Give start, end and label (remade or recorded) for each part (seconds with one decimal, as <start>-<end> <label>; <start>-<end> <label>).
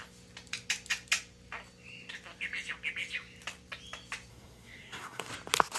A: 0.0-4.3 recorded; 4.3-5.3 remade; 5.3-5.8 recorded